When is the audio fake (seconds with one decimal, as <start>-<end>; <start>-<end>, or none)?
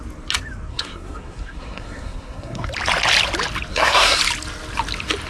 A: 0.7-2.7; 3.7-4.2